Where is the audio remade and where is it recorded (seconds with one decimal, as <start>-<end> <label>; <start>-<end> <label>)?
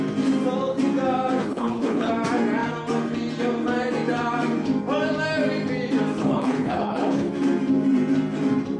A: 0.0-1.4 recorded; 1.4-2.1 remade; 2.1-6.2 recorded; 6.2-7.3 remade; 7.3-8.8 recorded